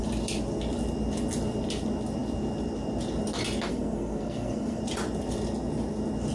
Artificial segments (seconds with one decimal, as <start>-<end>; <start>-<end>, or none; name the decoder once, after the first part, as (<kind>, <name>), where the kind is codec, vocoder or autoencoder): 3.7-4.8 (codec, SNAC)